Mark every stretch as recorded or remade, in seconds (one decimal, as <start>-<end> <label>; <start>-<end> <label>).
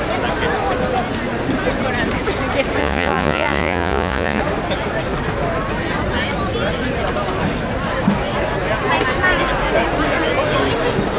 0.0-2.8 recorded; 2.8-4.4 remade; 4.4-11.2 recorded